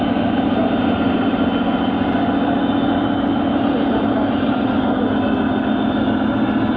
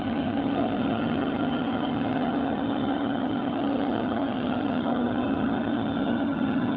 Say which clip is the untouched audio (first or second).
first